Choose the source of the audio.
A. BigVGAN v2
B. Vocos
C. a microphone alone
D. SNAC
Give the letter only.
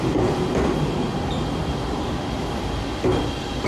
C